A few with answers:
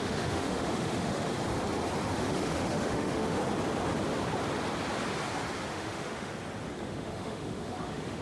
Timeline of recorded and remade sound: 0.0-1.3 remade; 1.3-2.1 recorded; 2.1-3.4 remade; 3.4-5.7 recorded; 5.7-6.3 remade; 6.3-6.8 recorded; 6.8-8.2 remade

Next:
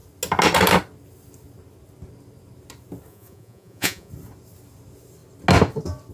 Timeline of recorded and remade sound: 0.0-3.1 recorded; 3.1-4.1 remade; 4.1-6.1 recorded